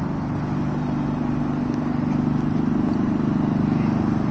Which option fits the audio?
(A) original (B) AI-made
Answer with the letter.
A